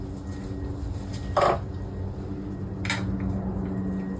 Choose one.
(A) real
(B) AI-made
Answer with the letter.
A